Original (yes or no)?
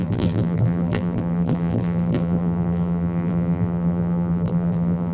no